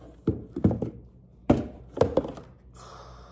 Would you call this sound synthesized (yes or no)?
no